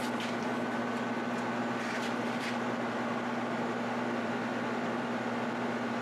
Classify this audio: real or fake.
fake